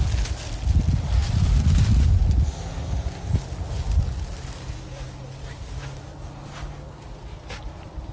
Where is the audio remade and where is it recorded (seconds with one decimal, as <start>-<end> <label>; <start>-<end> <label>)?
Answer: 0.0-8.1 recorded